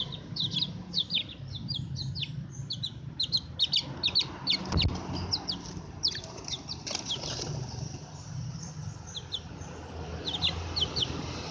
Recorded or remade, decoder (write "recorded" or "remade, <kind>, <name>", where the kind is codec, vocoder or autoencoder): recorded